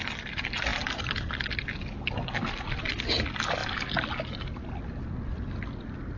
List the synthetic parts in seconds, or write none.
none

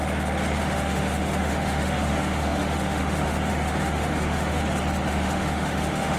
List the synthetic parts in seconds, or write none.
0.6-4.6 (autoencoder, DAC-VAE); 5.1-6.2

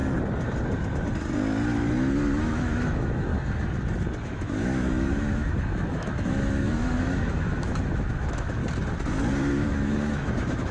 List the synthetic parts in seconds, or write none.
2.4-3.3 (autoencoder, DAC-VAE); 4.2-8.6; 9.5-10.7

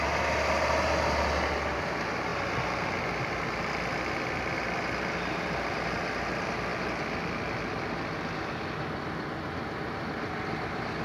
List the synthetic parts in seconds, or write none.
none

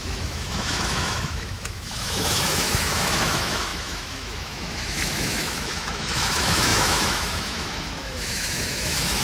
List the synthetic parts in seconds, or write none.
0.0-9.2 (autoencoder, DAC-VAE)